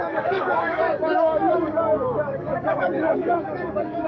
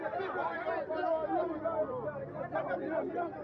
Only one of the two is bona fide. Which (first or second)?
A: second